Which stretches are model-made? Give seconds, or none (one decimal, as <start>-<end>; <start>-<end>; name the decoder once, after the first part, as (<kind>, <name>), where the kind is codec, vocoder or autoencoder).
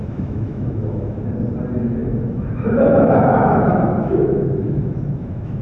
0.0-1.3 (autoencoder, DAC-VAE); 2.0-5.6